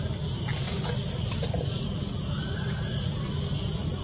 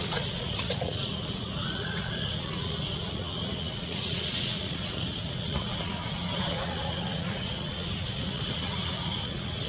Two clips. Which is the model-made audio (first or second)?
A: second